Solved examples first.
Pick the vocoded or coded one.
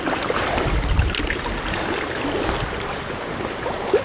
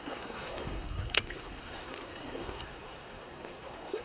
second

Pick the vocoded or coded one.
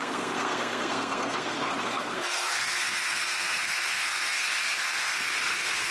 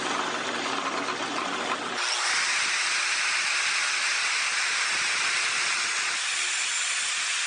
first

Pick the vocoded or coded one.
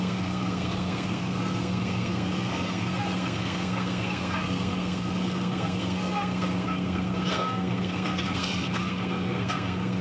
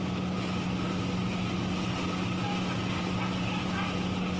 first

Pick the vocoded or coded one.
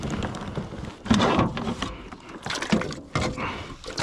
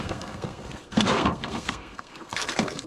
second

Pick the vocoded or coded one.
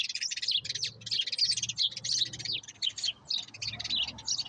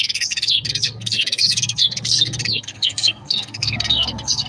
second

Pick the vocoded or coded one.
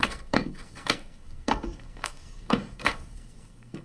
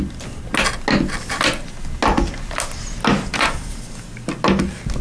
first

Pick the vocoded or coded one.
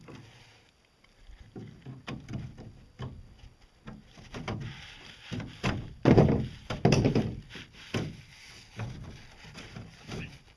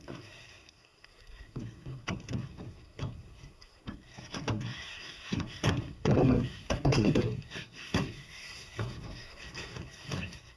second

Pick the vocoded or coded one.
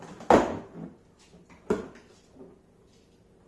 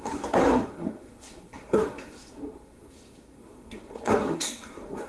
second